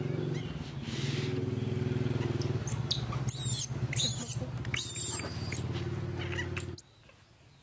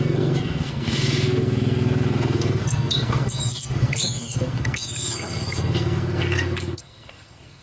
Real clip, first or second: first